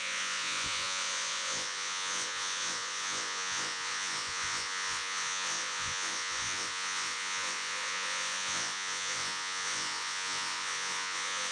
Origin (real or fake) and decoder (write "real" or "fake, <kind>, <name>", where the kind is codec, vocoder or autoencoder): fake, vocoder, Vocos